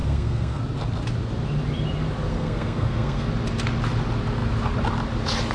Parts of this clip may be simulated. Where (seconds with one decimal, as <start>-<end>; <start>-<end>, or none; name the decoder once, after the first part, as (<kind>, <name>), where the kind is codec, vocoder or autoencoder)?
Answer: 0.0-0.6 (codec, SNAC); 2.3-3.3